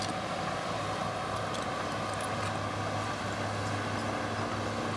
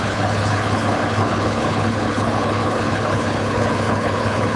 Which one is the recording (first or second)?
first